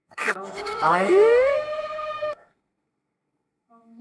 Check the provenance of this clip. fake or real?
fake